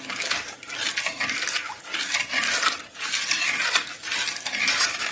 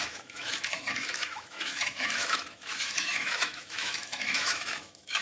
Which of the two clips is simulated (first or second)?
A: second